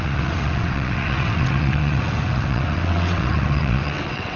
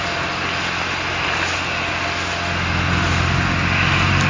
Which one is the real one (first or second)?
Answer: second